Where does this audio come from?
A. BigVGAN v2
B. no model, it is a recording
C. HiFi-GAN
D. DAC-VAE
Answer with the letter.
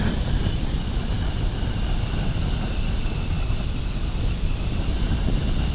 B